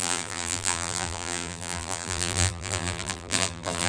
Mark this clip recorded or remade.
remade